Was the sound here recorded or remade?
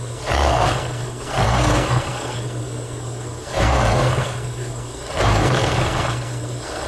remade